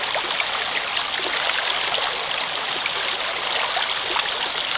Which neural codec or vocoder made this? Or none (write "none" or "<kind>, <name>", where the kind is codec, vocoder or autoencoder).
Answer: none